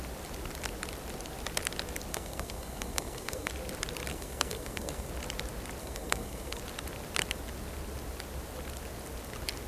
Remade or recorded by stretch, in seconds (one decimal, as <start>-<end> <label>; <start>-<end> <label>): 0.0-2.1 recorded; 2.1-3.5 remade; 3.5-4.1 recorded; 4.1-5.1 remade; 5.1-5.8 recorded; 5.8-6.6 remade; 6.6-9.7 recorded